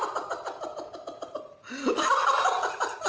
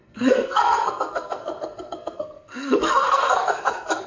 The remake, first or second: second